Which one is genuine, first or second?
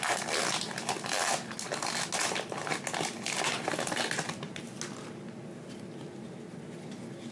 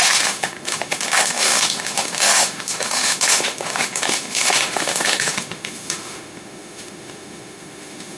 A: first